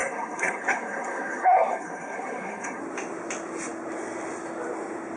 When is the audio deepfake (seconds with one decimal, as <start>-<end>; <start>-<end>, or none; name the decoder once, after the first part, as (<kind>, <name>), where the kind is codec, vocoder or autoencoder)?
0.0-2.8 (codec, SNAC)

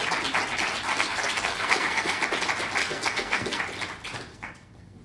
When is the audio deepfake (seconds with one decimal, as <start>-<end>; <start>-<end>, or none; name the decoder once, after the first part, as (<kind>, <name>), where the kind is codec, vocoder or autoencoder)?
0.9-2.2 (codec, SNAC); 2.8-3.6; 4.3-5.0

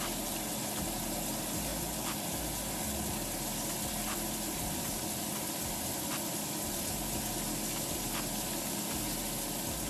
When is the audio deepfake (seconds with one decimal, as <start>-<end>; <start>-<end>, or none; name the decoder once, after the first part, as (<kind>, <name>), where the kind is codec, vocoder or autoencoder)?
1.7-2.4 (vocoder, BigVGAN v2); 4.1-6.1

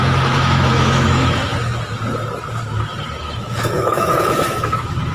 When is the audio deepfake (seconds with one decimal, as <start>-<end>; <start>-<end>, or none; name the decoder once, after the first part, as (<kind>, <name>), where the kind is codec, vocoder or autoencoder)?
0.0-1.4 (autoencoder, DAC-VAE); 3.2-5.1